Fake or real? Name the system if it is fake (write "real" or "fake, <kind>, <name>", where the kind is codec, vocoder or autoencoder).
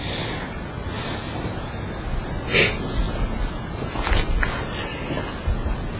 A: real